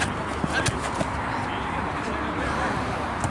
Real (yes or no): yes